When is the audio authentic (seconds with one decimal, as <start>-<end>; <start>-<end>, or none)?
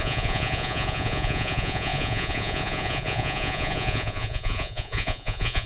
none